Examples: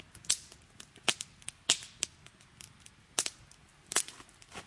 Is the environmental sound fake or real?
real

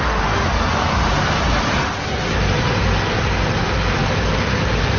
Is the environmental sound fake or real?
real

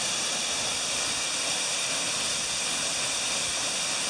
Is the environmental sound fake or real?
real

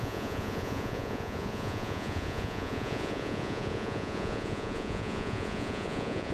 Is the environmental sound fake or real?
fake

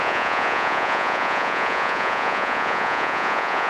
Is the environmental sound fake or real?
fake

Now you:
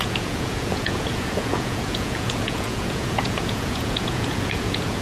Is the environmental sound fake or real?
fake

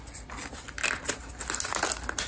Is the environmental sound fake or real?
real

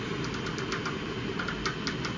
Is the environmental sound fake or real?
real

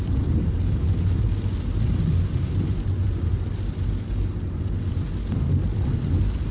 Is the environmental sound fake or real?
real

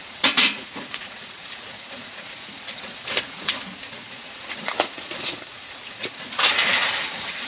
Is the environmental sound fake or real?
fake